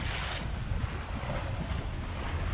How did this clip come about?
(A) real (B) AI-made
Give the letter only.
A